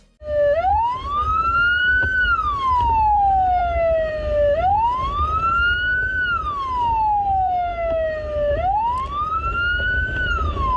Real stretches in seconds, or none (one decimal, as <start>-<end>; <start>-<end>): 0.0-10.8